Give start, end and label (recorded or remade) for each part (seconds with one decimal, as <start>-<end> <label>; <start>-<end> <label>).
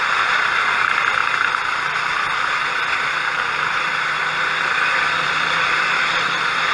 0.0-1.2 remade; 1.2-3.7 recorded; 3.7-6.7 remade